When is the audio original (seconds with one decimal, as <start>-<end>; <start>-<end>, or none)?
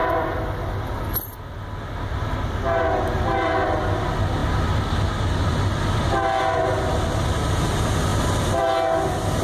0.8-9.4